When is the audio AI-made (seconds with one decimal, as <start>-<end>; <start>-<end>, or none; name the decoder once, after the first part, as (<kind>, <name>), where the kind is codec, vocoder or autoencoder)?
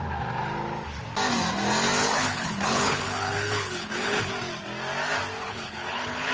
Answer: 2.0-4.3 (codec, HILCodec); 5.4-6.3